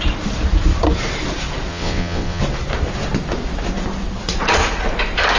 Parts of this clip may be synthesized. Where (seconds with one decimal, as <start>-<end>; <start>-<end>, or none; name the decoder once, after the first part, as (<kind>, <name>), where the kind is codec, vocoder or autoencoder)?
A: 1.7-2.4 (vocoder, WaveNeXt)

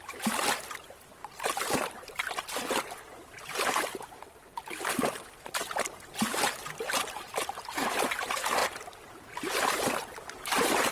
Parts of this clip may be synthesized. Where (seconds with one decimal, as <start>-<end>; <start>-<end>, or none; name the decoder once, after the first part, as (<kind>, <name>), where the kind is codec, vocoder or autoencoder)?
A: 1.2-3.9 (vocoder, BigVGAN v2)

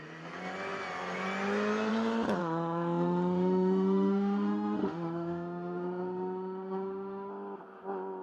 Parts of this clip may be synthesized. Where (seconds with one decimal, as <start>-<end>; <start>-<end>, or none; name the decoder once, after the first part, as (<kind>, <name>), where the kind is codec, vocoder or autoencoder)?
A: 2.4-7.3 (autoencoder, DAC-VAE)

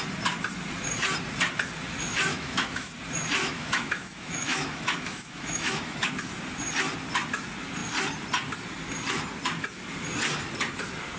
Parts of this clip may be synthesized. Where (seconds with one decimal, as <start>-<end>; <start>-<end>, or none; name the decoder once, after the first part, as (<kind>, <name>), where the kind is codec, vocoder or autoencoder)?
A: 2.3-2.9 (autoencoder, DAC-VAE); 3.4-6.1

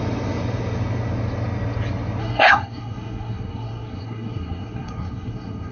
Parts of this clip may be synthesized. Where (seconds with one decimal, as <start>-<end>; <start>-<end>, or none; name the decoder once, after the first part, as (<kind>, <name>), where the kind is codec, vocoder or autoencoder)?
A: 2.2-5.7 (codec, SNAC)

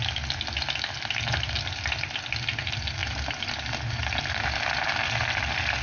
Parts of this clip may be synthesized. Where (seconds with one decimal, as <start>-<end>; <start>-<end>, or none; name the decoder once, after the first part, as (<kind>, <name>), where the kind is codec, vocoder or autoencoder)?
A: none